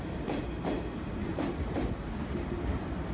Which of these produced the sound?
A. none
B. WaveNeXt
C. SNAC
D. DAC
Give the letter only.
A